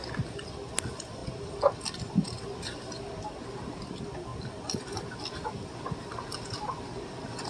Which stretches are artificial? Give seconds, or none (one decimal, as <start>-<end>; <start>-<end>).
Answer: 0.0-1.2; 2.0-4.3; 5.0-7.5